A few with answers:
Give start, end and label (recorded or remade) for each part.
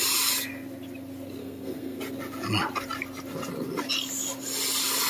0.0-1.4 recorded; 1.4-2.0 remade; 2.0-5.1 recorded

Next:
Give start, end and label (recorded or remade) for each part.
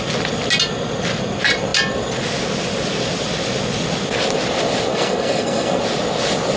0.0-4.9 recorded; 4.9-5.8 remade; 5.8-6.6 recorded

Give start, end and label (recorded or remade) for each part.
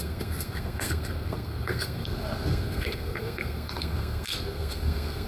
0.0-5.3 remade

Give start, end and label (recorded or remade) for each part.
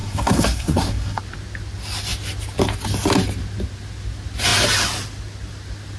0.0-1.2 remade; 1.2-6.0 recorded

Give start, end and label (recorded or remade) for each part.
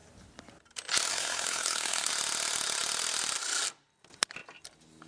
0.0-1.1 recorded; 1.1-2.1 remade; 2.1-5.1 recorded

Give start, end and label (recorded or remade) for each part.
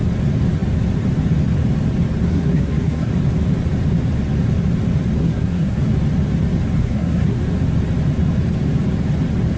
0.0-2.3 recorded; 2.3-3.1 remade; 3.1-5.2 recorded; 5.2-5.8 remade; 5.8-6.8 recorded; 6.8-7.4 remade; 7.4-9.6 recorded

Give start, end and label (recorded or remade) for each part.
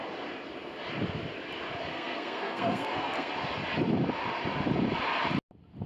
0.0-1.9 recorded; 1.9-3.3 remade; 3.3-5.9 recorded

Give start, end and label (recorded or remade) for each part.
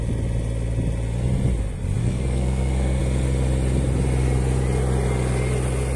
0.0-2.0 recorded; 2.0-3.0 remade; 3.0-6.0 recorded